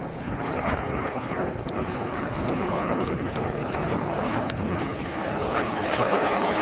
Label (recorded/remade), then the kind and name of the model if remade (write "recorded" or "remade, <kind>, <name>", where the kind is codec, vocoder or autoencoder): remade, codec, HILCodec